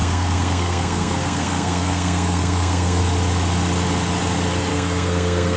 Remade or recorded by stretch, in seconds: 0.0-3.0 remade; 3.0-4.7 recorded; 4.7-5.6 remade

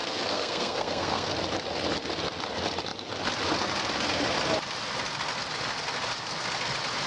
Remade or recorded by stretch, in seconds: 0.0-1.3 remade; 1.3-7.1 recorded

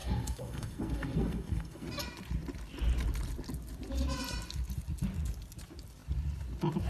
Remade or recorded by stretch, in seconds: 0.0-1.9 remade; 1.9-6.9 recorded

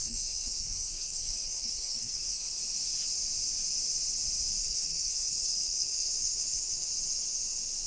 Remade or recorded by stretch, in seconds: 0.0-2.6 remade; 2.6-4.6 recorded; 4.6-6.9 remade; 6.9-7.9 recorded

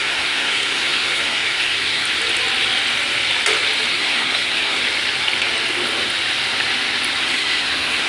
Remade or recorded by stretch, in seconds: 0.0-2.0 remade; 2.0-3.9 recorded; 3.9-4.8 remade; 4.8-7.2 recorded; 7.2-8.1 remade